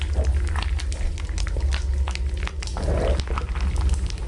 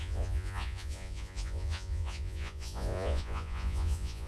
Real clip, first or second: first